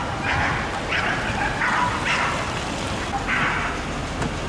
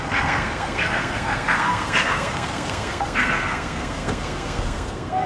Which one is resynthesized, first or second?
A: second